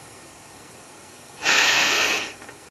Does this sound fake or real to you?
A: fake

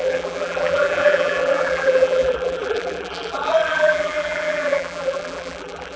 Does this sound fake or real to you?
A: fake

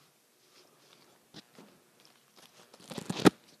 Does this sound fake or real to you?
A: real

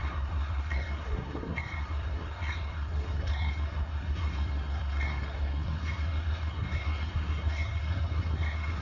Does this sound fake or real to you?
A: fake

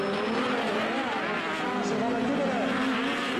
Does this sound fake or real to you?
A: real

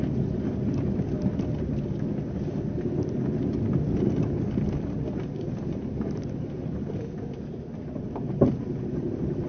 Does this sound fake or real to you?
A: real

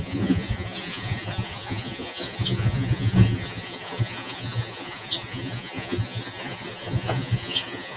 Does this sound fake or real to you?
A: fake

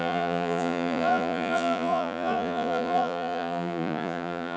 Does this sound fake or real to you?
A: fake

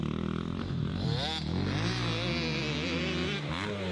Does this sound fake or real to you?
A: real